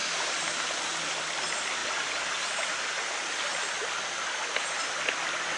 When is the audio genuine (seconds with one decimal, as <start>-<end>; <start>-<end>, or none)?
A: 0.0-5.6